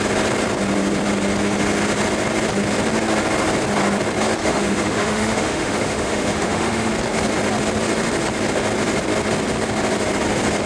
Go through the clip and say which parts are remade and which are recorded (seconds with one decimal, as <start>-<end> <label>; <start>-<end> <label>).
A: 0.0-4.4 recorded; 4.4-6.9 remade; 6.9-10.7 recorded